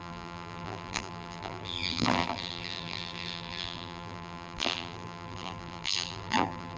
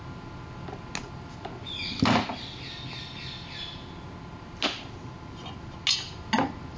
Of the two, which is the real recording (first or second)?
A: second